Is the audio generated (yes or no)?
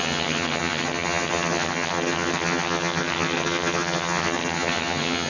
yes